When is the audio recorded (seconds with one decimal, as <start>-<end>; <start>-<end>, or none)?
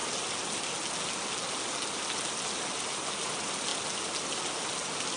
0.0-5.2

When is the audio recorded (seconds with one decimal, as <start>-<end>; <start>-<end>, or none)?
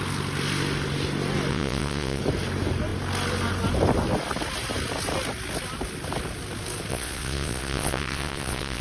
0.0-1.5; 2.2-6.9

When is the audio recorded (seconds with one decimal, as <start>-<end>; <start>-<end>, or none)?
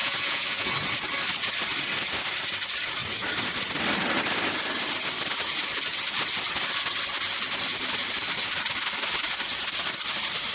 0.7-10.5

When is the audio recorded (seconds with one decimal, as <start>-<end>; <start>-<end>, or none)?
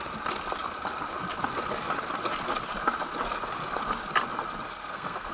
0.0-4.8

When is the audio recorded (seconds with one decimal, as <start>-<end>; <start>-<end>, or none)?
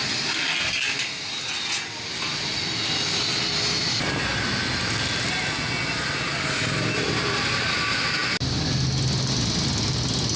0.0-10.4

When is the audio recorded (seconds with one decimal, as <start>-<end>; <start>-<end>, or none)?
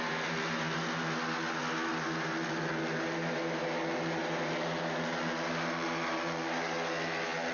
0.0-7.5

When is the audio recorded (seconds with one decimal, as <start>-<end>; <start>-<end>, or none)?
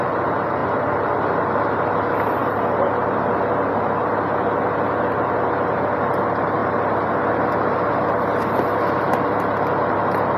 0.0-10.4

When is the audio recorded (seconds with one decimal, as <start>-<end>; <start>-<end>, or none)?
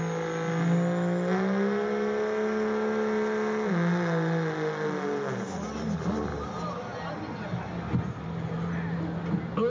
0.0-9.7